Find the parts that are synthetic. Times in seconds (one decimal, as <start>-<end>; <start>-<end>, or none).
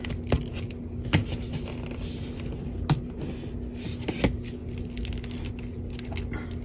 none